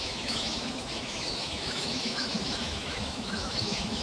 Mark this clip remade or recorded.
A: remade